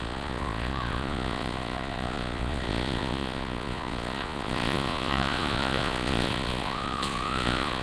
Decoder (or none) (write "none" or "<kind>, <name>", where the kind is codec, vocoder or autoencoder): vocoder, Vocos